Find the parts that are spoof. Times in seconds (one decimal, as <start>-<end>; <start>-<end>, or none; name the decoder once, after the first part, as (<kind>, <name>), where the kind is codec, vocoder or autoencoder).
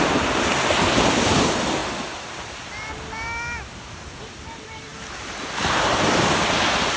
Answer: none